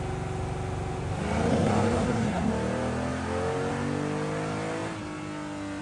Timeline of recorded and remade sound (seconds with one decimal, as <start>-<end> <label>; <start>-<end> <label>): 0.0-1.5 recorded; 1.5-2.5 remade; 2.5-5.8 recorded